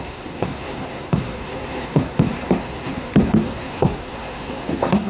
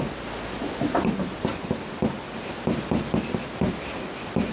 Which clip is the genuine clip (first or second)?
second